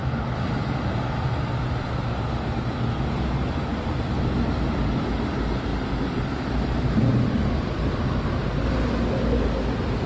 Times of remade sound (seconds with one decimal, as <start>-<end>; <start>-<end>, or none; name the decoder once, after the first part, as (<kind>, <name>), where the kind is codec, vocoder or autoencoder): 0.0-2.2 (vocoder, BigVGAN v2); 3.7-4.8; 5.7-8.0